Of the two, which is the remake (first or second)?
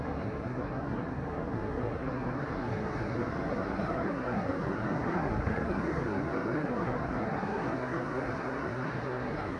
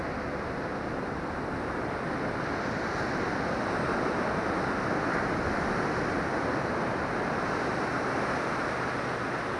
first